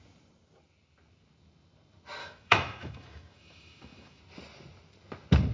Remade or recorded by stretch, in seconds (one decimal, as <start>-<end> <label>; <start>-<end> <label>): 0.0-2.2 recorded; 2.2-4.2 remade; 4.2-5.5 recorded